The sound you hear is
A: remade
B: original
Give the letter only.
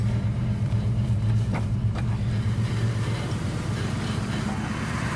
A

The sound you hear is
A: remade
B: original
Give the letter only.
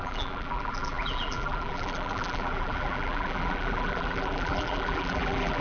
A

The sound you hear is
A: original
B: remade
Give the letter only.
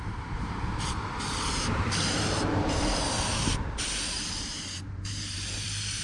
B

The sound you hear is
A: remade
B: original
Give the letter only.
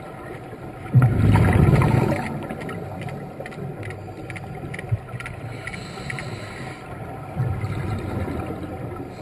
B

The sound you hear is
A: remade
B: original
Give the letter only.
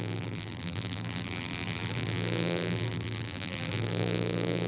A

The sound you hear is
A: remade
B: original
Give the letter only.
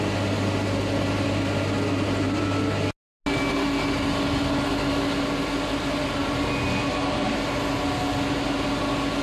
B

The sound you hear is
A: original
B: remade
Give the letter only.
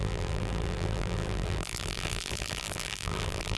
B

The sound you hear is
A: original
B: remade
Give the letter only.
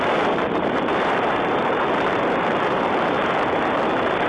B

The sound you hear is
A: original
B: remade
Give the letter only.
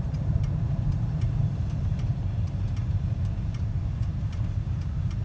B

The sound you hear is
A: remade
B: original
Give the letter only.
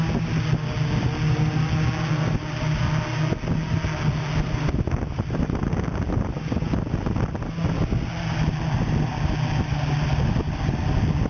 B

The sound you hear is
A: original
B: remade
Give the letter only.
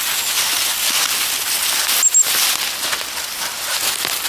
A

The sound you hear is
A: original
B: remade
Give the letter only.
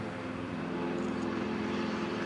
B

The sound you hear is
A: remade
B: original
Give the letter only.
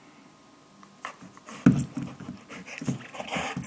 B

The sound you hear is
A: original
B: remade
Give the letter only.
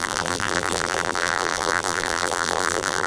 B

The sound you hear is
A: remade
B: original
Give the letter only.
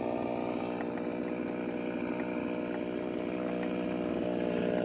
B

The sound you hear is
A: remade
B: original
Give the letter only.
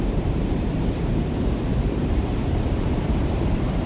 A